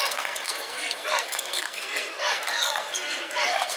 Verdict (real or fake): fake